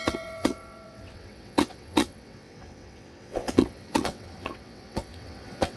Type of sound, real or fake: fake